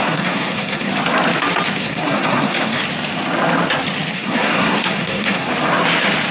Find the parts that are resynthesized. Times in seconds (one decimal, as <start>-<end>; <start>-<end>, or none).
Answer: 0.0-0.9; 1.8-2.8; 4.1-5.5